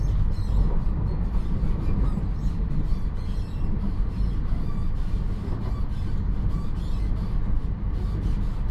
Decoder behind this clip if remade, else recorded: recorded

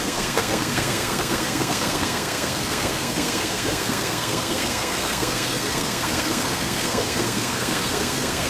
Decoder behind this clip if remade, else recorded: remade, codec, SNAC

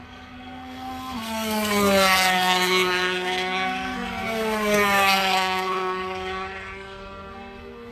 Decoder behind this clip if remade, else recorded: remade, codec, SNAC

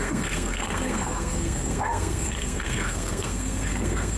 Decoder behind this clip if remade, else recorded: remade, codec, SNAC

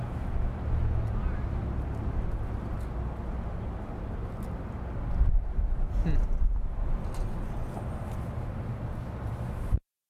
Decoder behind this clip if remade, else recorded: recorded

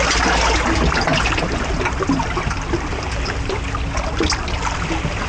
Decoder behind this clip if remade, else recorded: recorded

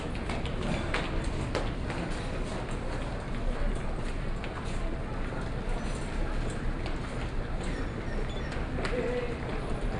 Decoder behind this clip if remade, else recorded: recorded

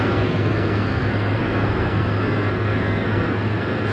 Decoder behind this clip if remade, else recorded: remade, codec, SNAC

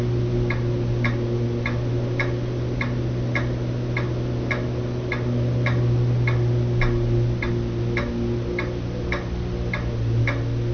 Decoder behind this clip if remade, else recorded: recorded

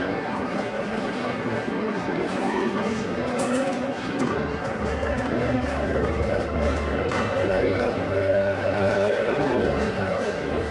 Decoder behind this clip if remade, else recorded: remade, codec, SNAC